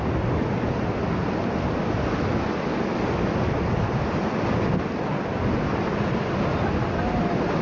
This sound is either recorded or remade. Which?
recorded